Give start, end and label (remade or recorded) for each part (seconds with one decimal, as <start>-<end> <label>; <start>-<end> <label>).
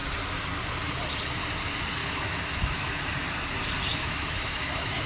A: 0.0-2.0 recorded; 2.0-3.0 remade; 3.0-3.9 recorded; 3.9-5.1 remade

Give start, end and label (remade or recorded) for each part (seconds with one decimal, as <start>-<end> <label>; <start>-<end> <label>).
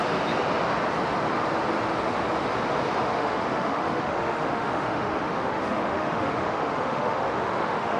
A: 0.0-3.1 recorded; 3.1-8.0 remade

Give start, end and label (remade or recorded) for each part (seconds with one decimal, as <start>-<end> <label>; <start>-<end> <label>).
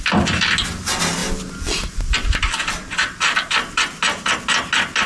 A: 0.0-5.1 recorded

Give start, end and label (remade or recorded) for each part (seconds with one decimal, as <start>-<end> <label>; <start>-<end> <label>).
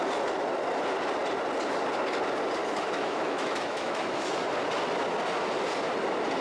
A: 0.0-2.6 recorded; 2.6-4.3 remade; 4.3-6.4 recorded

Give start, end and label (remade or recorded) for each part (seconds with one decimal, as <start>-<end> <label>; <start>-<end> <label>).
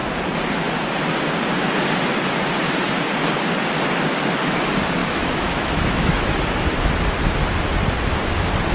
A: 0.0-5.0 recorded; 5.0-6.4 remade; 6.4-8.7 recorded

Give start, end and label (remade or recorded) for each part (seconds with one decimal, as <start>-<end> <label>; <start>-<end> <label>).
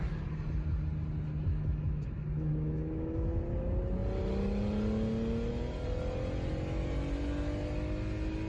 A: 0.0-1.5 recorded; 1.5-3.4 remade; 3.4-8.5 recorded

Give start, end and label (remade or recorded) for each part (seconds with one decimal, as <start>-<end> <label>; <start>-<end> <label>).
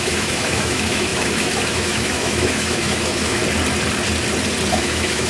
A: 0.0-3.4 remade; 3.4-4.7 recorded; 4.7-5.3 remade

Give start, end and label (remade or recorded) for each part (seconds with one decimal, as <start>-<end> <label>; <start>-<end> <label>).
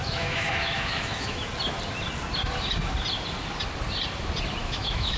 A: 0.0-1.5 remade; 1.5-4.6 recorded; 4.6-5.2 remade